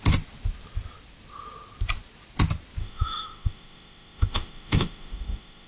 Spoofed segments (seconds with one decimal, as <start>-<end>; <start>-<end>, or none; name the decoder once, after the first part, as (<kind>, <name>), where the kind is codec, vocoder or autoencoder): 2.8-5.7 (autoencoder, DAC-VAE)